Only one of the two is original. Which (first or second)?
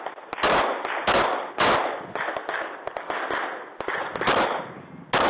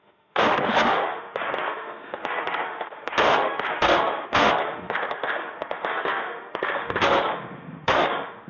first